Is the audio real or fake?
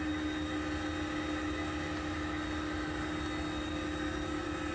real